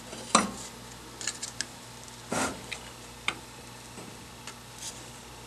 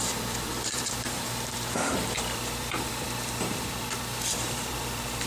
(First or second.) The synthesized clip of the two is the second